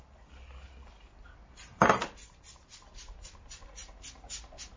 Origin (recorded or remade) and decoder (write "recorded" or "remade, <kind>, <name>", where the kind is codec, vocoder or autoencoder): recorded